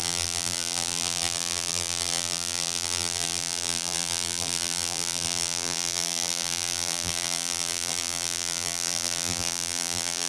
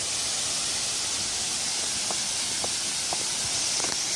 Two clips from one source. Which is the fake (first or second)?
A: first